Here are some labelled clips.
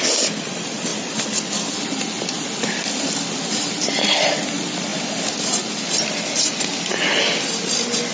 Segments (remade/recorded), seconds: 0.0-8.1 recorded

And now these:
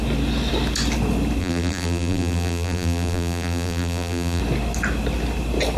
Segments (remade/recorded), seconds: 0.0-1.4 recorded; 1.4-4.4 remade; 4.4-5.8 recorded

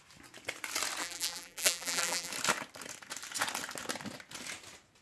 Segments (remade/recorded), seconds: 0.0-1.0 recorded; 1.0-2.3 remade; 2.3-5.0 recorded

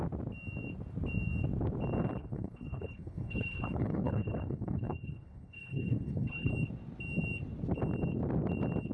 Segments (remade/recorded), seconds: 0.0-2.2 recorded; 2.2-6.5 remade; 6.5-8.9 recorded